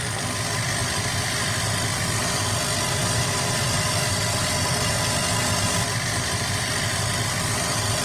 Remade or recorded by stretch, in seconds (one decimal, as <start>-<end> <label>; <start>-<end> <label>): 0.0-3.0 recorded; 3.0-4.1 remade; 4.1-8.0 recorded